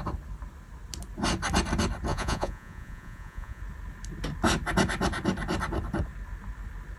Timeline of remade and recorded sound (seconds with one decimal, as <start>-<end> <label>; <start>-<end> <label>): 0.0-2.1 recorded; 2.1-3.6 remade; 3.6-7.0 recorded